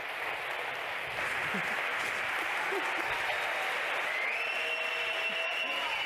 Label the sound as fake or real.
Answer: real